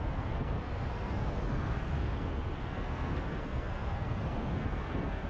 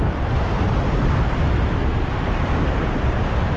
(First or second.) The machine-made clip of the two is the first